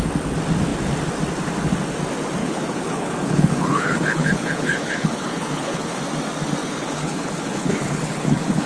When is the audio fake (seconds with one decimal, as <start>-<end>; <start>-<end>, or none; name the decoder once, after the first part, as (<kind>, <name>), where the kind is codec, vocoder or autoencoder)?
2.4-6.0 (codec, HILCodec); 6.6-8.7

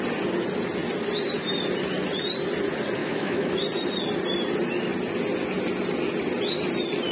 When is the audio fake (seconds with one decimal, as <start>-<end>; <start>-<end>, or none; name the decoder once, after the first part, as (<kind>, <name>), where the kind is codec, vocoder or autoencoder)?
3.0-3.5 (autoencoder, DAC-VAE)

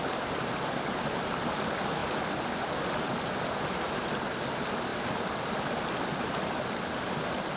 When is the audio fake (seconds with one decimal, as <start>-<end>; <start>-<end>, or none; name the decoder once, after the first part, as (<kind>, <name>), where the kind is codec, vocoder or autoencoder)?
none

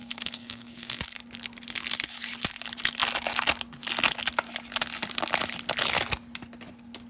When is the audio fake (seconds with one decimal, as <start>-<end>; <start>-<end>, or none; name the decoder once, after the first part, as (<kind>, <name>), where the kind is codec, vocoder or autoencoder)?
0.0-1.0 (codec, SNAC)